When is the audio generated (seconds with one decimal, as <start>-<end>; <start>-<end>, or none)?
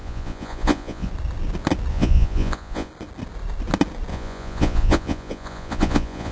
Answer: 0.0-1.1; 1.9-2.9; 4.1-6.3